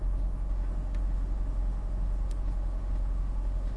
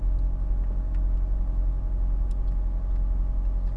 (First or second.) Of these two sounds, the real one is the second